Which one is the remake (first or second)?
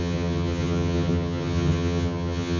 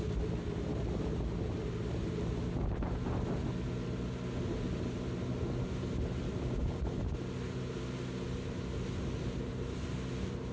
first